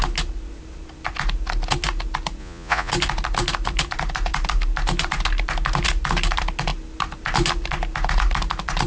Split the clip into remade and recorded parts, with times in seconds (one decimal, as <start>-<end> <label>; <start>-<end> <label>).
0.0-2.4 recorded; 2.4-2.9 remade; 2.9-8.9 recorded